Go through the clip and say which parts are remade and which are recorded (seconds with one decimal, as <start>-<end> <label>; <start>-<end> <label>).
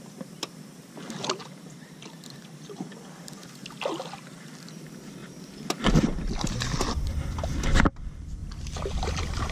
0.0-8.4 remade; 8.4-9.1 recorded; 9.1-9.5 remade